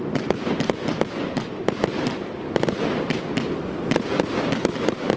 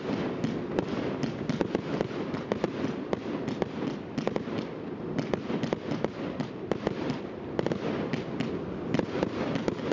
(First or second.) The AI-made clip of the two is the first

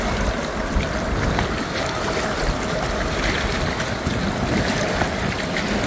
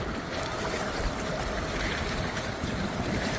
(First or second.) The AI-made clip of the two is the second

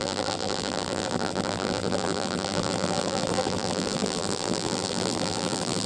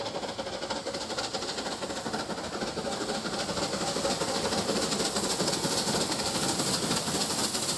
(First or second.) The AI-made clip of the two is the first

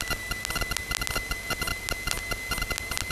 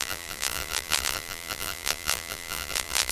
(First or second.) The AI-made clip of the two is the second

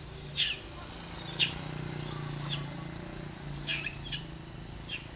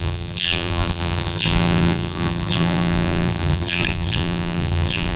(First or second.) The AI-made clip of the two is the second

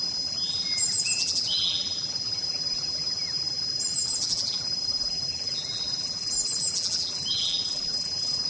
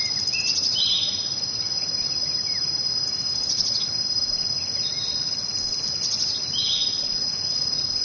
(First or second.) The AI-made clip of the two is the first